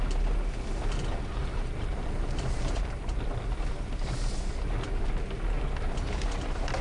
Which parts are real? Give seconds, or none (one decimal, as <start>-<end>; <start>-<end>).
0.0-1.4; 3.2-6.8